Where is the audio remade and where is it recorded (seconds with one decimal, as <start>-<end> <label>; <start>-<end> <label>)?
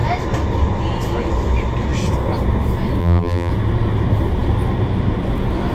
0.0-3.0 recorded; 3.0-3.5 remade; 3.5-5.7 recorded